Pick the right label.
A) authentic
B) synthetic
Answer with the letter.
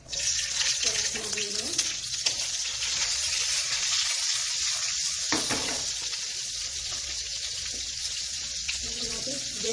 B